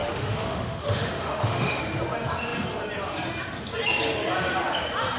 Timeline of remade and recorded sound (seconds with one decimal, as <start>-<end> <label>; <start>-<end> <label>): 0.0-1.8 remade; 1.8-5.2 recorded